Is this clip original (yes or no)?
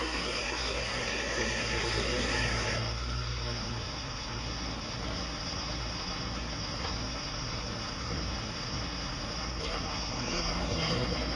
no